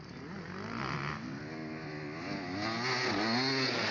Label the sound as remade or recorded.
recorded